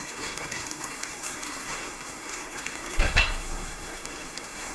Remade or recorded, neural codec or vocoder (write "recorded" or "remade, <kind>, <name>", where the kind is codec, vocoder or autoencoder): remade, codec, SNAC